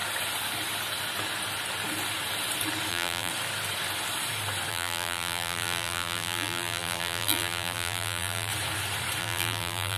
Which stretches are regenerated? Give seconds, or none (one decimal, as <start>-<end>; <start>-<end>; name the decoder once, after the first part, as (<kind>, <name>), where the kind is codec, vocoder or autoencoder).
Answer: 2.9-3.3 (vocoder, BigVGAN v2); 4.7-8.5; 9.2-10.0